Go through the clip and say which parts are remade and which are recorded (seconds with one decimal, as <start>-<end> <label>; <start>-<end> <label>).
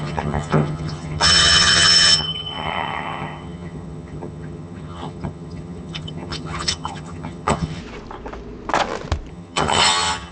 0.0-7.8 remade; 7.8-9.3 recorded; 9.3-10.3 remade